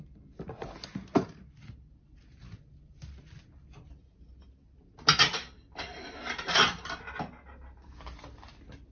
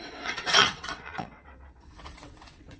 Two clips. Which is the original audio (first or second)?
first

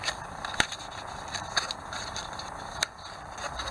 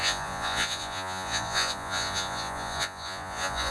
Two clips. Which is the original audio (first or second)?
first